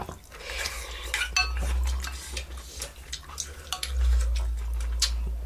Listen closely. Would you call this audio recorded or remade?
recorded